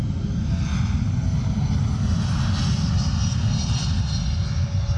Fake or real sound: real